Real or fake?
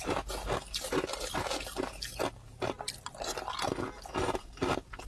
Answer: real